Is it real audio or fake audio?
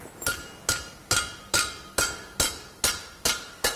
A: real